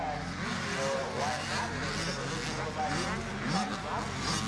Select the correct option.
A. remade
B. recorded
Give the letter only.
B